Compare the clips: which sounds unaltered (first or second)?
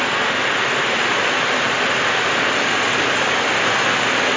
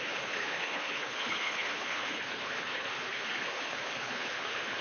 first